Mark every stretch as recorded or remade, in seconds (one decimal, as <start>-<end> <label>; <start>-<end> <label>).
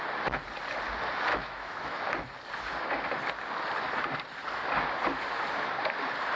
0.0-1.3 recorded; 1.3-2.1 remade; 2.1-6.4 recorded